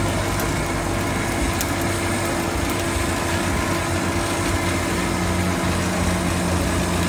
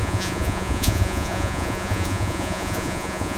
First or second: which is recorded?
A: first